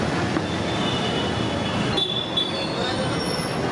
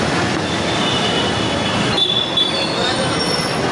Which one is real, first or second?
first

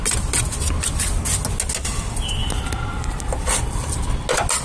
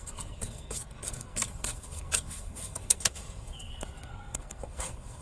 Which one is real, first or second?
first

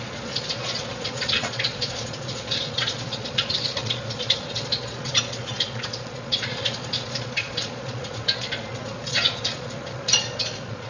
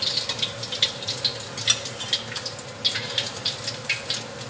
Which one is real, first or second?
second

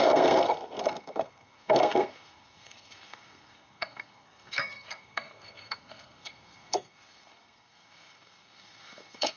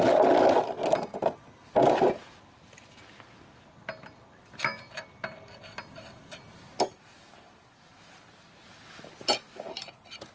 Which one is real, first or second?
second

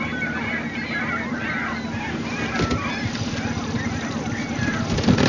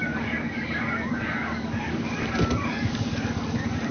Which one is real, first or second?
first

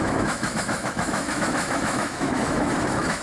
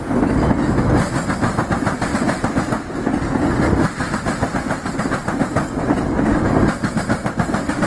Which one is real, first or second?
second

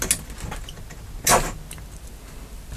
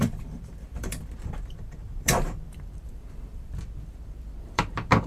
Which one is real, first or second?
first